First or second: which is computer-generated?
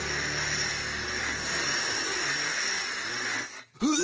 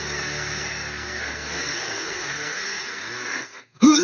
second